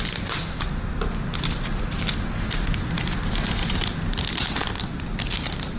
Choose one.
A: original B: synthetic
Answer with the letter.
B